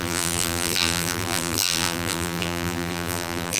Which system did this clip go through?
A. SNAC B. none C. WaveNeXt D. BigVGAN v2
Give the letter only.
D